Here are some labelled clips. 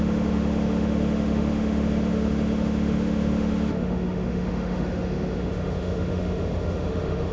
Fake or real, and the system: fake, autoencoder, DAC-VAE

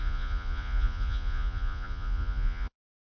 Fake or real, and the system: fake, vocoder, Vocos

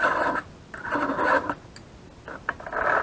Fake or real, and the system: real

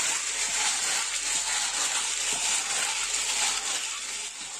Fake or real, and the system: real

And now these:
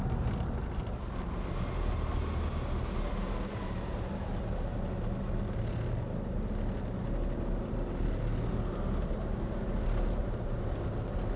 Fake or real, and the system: real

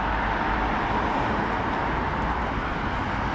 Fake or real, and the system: real